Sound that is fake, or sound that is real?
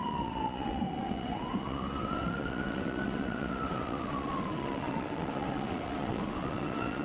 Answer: fake